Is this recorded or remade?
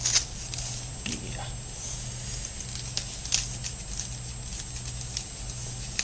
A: recorded